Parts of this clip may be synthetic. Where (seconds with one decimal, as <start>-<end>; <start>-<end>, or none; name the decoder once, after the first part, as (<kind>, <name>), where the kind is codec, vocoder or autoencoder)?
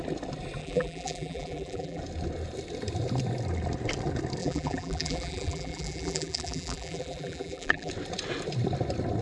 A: 0.6-2.0 (vocoder, BigVGAN v2); 4.4-7.9